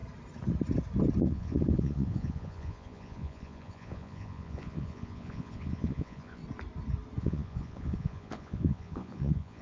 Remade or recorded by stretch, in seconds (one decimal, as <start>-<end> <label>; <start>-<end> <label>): 0.0-1.2 recorded; 1.2-6.4 remade; 6.4-7.2 recorded; 7.2-9.6 remade